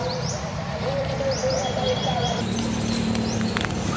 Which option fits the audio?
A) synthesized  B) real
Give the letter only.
B